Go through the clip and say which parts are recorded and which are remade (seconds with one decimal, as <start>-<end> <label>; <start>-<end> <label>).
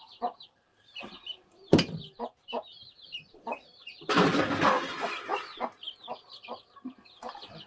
0.0-0.7 recorded; 0.7-4.4 remade; 4.4-7.7 recorded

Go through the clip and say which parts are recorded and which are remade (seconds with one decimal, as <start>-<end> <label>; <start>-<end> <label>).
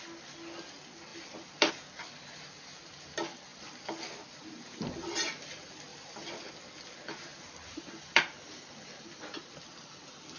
0.0-1.1 recorded; 1.1-1.7 remade; 1.7-3.5 recorded; 3.5-4.0 remade; 4.0-5.9 recorded; 5.9-6.5 remade; 6.5-7.3 recorded; 7.3-8.2 remade; 8.2-10.4 recorded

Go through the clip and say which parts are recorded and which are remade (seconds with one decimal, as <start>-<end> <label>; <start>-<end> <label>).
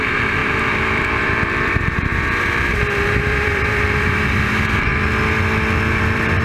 0.0-4.9 remade; 4.9-5.9 recorded; 5.9-6.4 remade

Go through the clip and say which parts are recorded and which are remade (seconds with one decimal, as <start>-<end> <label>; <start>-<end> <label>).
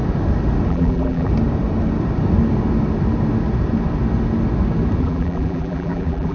0.0-0.7 recorded; 0.7-1.3 remade; 1.3-5.0 recorded; 5.0-6.3 remade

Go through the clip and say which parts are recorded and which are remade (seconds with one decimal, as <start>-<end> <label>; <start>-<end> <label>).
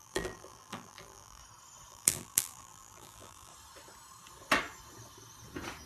0.0-1.4 remade; 1.4-1.9 recorded; 1.9-3.5 remade; 3.5-5.9 recorded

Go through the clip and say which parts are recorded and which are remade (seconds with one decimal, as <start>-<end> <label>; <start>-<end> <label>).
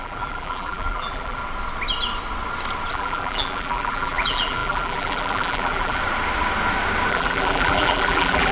0.0-1.4 remade; 1.4-2.9 recorded; 2.9-6.0 remade; 6.0-7.1 recorded; 7.1-8.5 remade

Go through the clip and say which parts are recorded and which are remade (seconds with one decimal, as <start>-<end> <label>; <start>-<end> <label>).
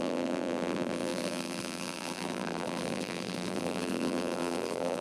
0.0-5.0 remade